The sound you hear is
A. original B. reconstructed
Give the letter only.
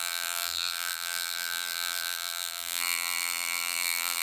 B